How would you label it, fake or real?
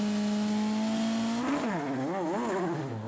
real